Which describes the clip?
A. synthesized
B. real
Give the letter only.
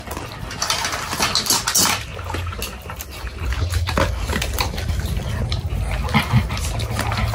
B